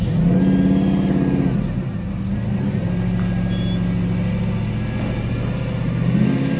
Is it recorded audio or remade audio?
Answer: recorded